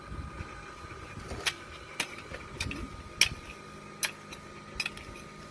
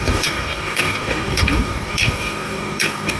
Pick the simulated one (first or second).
second